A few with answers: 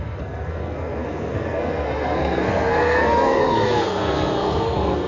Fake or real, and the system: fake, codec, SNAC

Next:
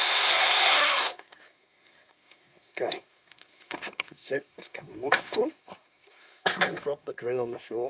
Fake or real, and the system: fake, codec, SNAC